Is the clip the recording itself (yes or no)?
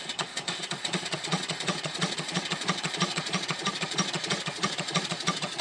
no